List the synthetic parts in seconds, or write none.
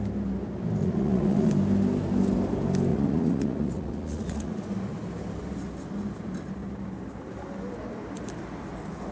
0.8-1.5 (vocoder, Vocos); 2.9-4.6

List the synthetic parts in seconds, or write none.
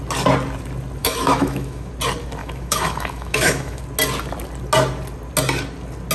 1.0-1.9 (autoencoder, DAC-VAE); 2.4-3.8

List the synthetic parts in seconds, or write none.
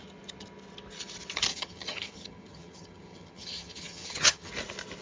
1.5-4.5 (vocoder, HiFi-GAN)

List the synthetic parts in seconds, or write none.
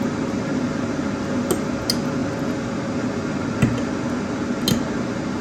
none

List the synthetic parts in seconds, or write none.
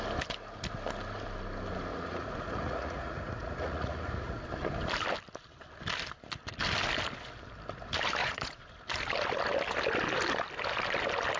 1.9-4.4 (vocoder, Vocos); 8.2-8.7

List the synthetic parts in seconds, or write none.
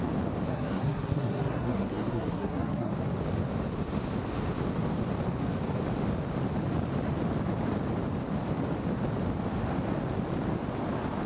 0.5-2.9 (codec, SNAC)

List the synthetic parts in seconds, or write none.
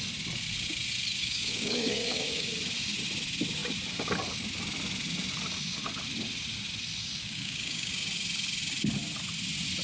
1.2-2.5 (codec, DAC); 7.0-7.9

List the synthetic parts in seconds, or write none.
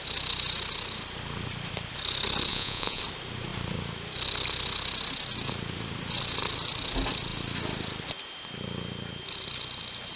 2.5-3.0 (vocoder, Vocos)